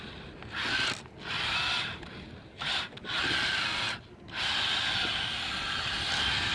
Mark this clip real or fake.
real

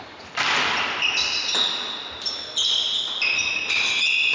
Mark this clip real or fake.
real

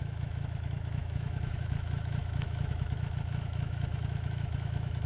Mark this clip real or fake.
fake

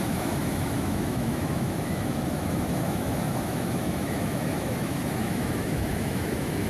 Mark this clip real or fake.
fake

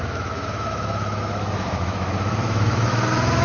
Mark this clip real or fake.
fake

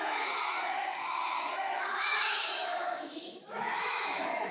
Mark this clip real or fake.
fake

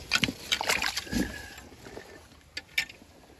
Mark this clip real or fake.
real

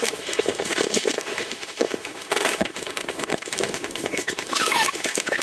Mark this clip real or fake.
fake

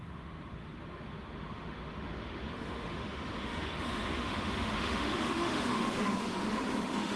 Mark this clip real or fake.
fake